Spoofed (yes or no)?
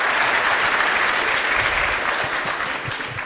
no